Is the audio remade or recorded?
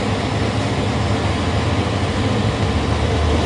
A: recorded